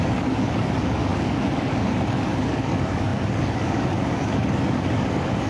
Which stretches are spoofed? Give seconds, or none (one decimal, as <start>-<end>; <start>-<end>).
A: 0.0-5.5